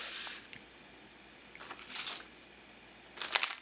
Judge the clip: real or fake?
real